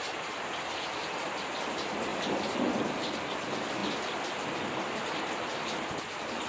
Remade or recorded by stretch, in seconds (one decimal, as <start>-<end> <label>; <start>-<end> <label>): 0.0-2.1 recorded; 2.1-2.8 remade; 2.8-6.5 recorded